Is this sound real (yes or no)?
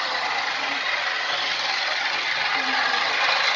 yes